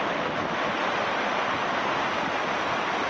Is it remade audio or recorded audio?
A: recorded